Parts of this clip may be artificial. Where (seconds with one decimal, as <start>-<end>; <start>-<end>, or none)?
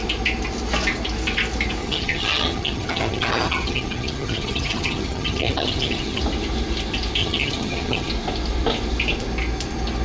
1.8-6.2; 7.2-8.1